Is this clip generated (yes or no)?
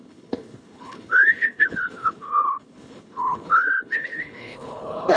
yes